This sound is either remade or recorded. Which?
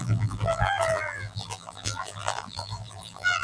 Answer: remade